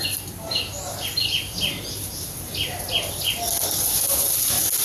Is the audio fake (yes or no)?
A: no